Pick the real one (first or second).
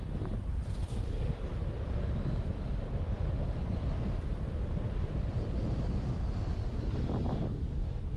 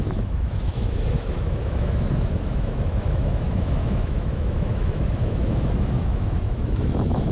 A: first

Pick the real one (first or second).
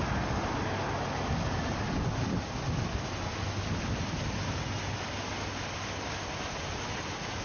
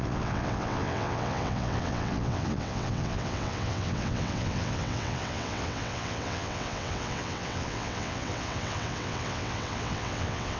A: first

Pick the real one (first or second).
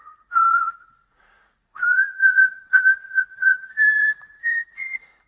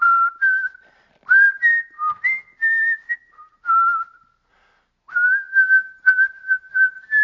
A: second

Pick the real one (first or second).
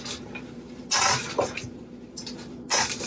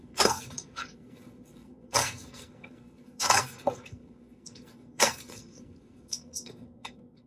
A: first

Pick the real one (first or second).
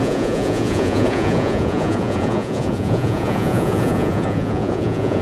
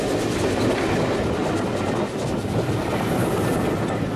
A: second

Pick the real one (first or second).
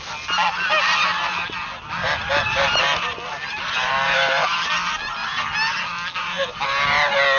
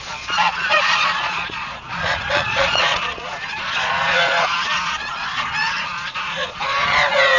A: first